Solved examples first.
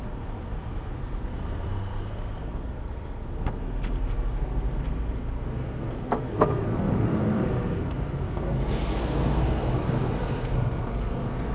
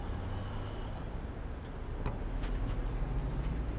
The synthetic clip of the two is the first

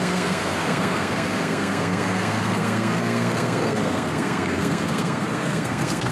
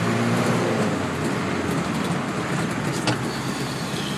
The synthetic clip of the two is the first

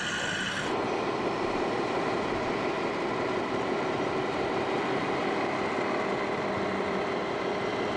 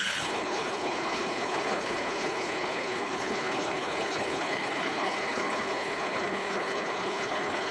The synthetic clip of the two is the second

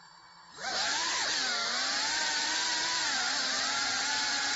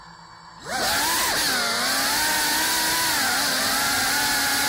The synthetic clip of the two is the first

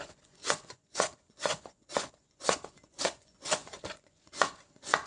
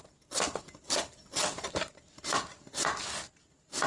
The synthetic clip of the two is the first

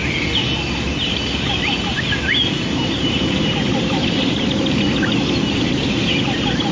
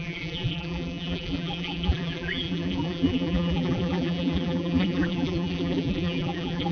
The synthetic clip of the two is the second